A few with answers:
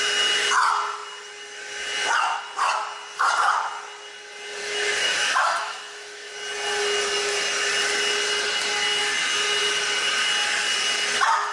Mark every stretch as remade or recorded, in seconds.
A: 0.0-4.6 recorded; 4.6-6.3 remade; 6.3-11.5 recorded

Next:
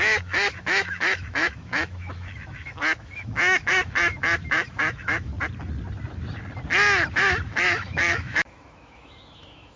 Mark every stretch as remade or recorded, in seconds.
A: 0.0-5.3 remade; 5.3-7.1 recorded; 7.1-9.8 remade

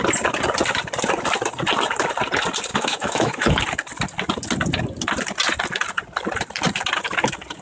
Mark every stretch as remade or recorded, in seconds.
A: 0.0-2.7 recorded; 2.7-3.6 remade; 3.6-7.6 recorded

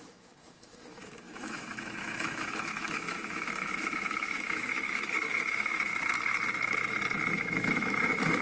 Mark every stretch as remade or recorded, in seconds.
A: 0.0-5.9 remade; 5.9-7.3 recorded; 7.3-8.4 remade

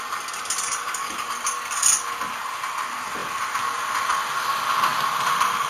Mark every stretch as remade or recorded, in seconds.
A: 0.0-5.7 recorded

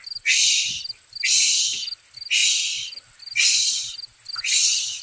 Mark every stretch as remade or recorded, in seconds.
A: 0.0-5.0 recorded

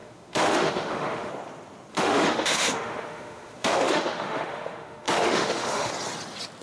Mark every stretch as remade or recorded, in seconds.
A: 0.0-1.3 remade; 1.3-1.9 recorded; 1.9-5.9 remade; 5.9-6.6 recorded

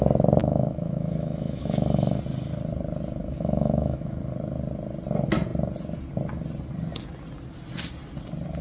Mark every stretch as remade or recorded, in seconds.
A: 0.0-0.4 recorded; 0.4-2.2 remade; 2.2-3.2 recorded; 3.2-4.2 remade; 4.2-8.6 recorded